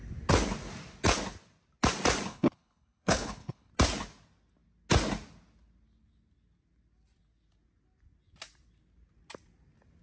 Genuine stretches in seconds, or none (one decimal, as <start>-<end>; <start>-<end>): 0.0-2.3; 3.7-10.0